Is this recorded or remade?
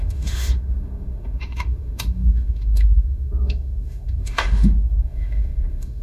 remade